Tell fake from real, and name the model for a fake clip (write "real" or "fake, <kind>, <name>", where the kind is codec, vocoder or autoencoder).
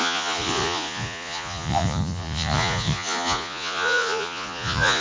fake, vocoder, Vocos